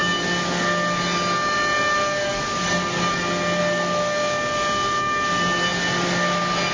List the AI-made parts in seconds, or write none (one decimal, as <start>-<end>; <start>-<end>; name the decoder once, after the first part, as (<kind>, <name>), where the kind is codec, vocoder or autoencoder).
none